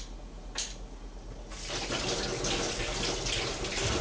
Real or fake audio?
real